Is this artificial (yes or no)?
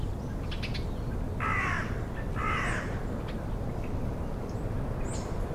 no